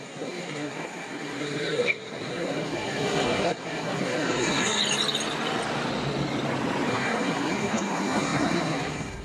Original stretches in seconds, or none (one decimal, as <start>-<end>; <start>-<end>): 4.8-6.9